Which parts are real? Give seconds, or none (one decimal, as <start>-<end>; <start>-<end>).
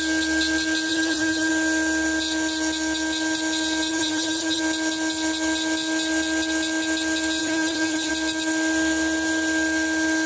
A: 0.0-0.9; 1.5-3.9; 4.6-7.4; 8.1-10.3